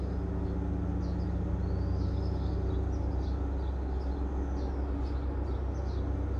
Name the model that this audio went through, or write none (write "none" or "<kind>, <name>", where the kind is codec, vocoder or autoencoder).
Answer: none